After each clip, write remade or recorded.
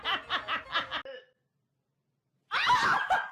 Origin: recorded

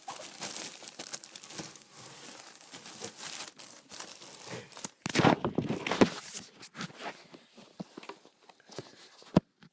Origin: recorded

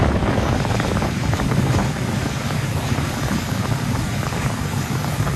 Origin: remade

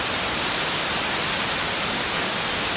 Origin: recorded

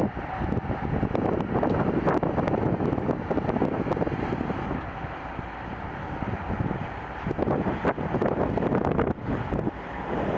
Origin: recorded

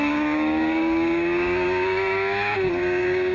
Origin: remade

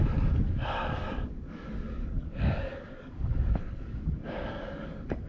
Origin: remade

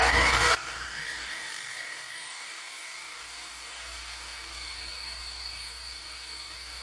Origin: remade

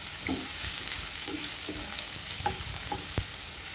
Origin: remade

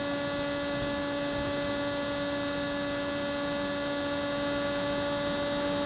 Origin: recorded